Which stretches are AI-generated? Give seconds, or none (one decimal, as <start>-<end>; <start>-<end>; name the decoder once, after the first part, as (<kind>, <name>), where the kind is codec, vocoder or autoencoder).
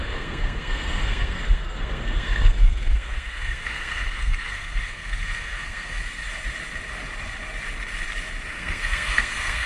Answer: 0.0-6.0 (codec, SNAC); 8.5-9.7